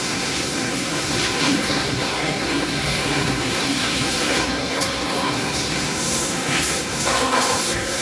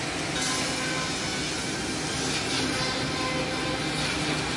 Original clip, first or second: second